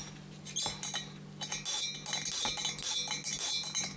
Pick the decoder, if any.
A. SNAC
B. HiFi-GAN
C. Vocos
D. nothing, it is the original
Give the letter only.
D